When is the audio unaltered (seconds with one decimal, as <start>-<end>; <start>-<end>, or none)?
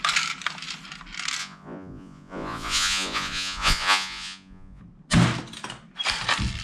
0.0-1.4; 4.8-6.6